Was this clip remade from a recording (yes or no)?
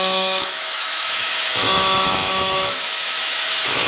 yes